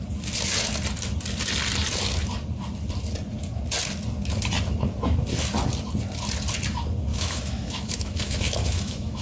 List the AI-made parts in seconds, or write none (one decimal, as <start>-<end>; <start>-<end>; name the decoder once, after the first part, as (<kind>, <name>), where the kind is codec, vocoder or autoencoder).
7.1-9.2 (autoencoder, DAC-VAE)